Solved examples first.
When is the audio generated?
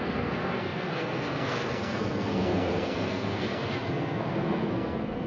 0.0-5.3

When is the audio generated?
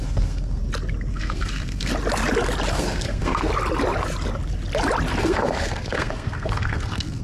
0.0-0.6; 1.1-1.9; 2.7-3.5; 5.2-7.2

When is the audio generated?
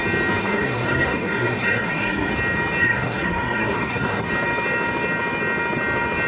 0.4-2.3; 2.8-4.3